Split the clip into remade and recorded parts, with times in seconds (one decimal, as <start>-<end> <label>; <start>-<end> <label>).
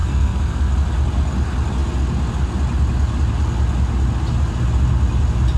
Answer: 0.0-0.7 remade; 0.7-5.6 recorded